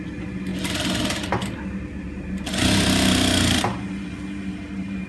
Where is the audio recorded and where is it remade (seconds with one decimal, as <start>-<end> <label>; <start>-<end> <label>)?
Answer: 0.0-5.1 recorded